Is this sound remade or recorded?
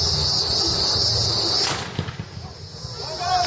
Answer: recorded